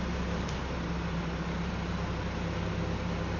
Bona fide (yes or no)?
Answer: yes